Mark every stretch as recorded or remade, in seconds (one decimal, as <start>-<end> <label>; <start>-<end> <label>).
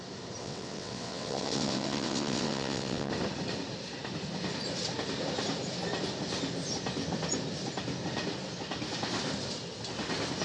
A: 0.0-0.4 recorded; 0.4-3.1 remade; 3.1-10.4 recorded